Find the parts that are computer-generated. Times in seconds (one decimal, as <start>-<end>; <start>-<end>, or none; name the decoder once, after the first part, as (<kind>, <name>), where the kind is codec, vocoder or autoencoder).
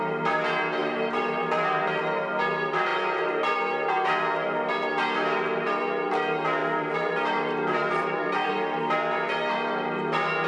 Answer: 0.8-2.0 (vocoder, BigVGAN v2); 6.6-8.5